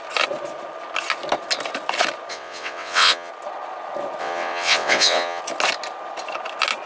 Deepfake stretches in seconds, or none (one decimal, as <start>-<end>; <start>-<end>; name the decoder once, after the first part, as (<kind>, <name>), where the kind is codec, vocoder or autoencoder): 2.3-3.3 (vocoder, WaveNeXt); 4.2-5.4